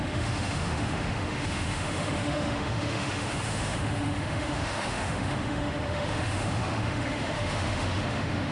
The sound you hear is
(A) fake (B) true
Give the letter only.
A